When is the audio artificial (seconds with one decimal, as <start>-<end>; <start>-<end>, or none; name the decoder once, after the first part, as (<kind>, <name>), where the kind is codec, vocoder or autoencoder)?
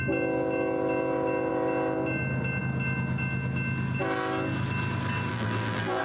5.3-6.0 (vocoder, BigVGAN v2)